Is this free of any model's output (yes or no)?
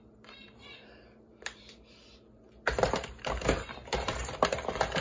no